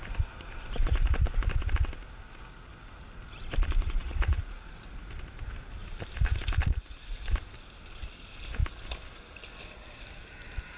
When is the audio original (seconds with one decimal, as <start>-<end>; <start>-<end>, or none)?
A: 0.0-4.0; 4.9-10.8